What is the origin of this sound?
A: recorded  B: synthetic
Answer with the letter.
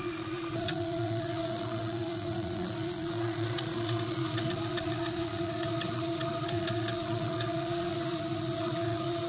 B